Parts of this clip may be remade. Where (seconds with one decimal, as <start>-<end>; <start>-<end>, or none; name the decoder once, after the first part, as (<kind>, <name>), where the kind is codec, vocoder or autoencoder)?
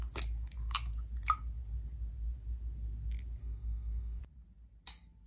3.4-4.2 (codec, SNAC)